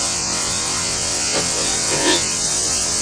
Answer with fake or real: fake